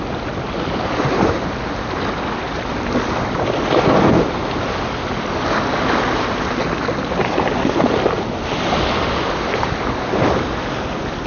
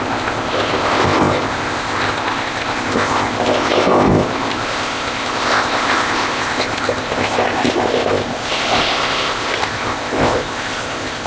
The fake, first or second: second